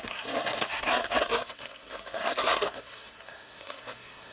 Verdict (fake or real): fake